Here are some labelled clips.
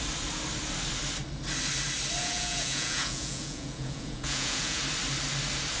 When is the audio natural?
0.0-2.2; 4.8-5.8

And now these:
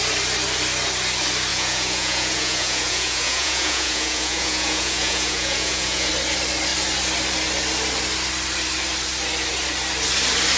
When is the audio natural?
0.0-1.5; 6.1-10.6

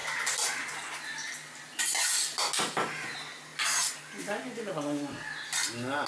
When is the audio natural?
0.0-6.1

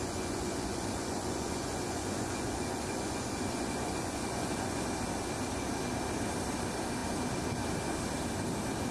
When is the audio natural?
4.8-8.9

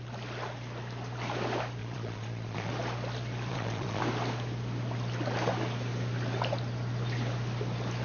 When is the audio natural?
0.0-1.8; 2.7-3.5; 4.0-8.0